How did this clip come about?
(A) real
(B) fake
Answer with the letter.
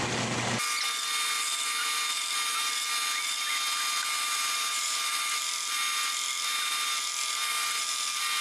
A